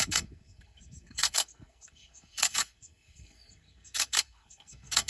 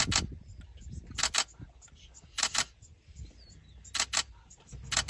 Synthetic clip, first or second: first